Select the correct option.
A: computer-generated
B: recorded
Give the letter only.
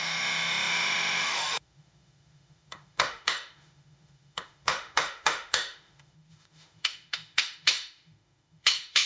A